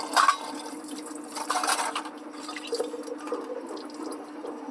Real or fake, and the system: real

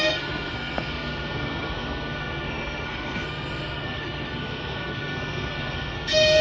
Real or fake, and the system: fake, codec, SNAC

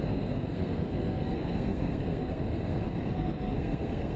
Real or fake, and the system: fake, codec, SNAC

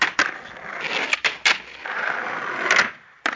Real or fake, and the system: real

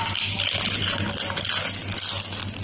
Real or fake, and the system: real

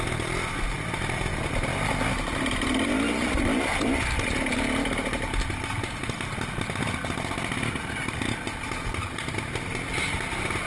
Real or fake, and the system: real